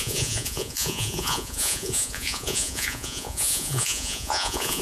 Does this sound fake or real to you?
fake